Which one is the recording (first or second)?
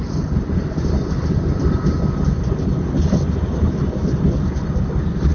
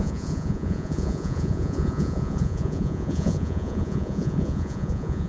first